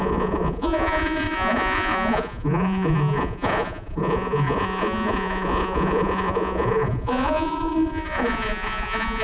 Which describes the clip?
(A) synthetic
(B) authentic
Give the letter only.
A